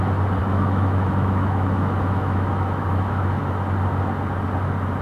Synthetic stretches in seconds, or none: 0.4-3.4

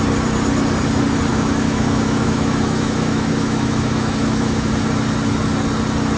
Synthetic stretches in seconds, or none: 1.3-4.7

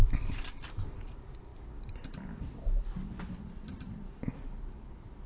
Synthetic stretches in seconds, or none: none

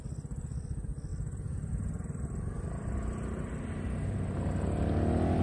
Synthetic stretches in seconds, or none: none

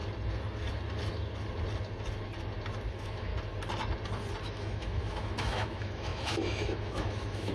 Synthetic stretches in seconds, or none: 2.9-3.3; 4.4-7.5